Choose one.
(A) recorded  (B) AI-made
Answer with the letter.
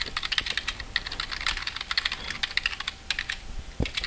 A